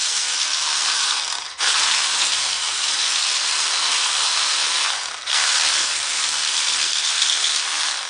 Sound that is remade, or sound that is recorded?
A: remade